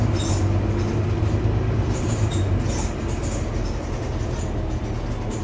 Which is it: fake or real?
real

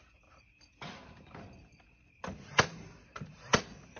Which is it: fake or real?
real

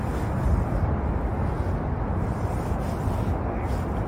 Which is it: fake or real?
real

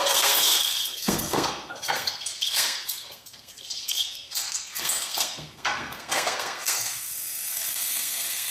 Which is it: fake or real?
fake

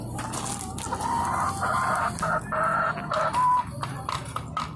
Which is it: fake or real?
real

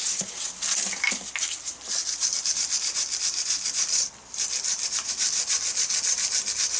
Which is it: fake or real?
real